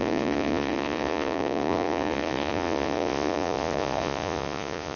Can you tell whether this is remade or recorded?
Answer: remade